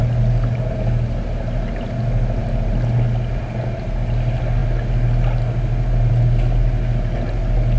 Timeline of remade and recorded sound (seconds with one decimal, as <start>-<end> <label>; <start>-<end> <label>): 0.0-7.8 recorded